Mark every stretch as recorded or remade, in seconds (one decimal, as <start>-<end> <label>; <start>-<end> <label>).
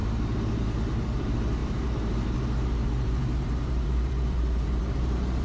0.0-5.4 remade